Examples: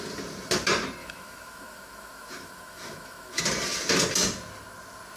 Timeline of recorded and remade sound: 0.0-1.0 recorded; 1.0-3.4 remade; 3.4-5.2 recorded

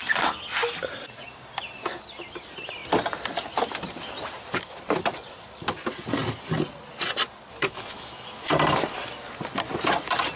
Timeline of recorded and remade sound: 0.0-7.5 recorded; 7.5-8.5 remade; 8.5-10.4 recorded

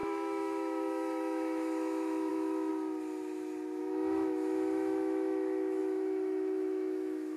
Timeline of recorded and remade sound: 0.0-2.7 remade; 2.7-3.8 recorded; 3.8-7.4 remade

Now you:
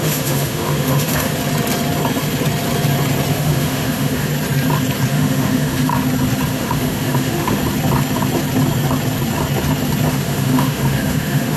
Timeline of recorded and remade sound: 0.0-1.3 remade; 1.3-3.3 recorded; 3.3-4.3 remade; 4.3-5.1 recorded; 5.1-5.9 remade; 5.9-6.5 recorded; 6.5-7.6 remade; 7.6-10.1 recorded; 10.1-11.6 remade